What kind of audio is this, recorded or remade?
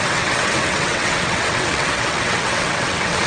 remade